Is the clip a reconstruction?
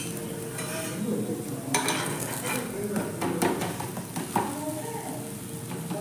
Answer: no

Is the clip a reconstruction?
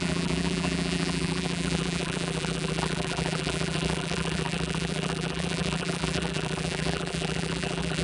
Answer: yes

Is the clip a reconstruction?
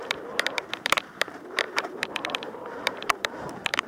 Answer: yes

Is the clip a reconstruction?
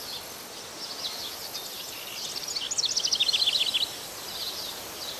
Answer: no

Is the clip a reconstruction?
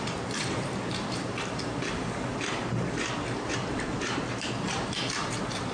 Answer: yes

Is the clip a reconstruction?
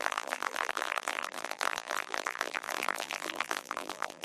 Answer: yes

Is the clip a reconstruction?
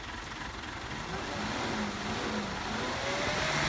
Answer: no